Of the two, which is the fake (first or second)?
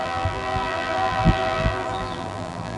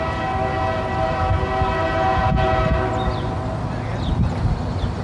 first